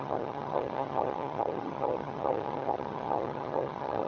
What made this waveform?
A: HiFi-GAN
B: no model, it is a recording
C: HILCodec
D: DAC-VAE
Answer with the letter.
A